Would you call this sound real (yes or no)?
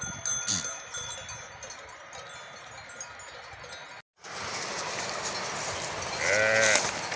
yes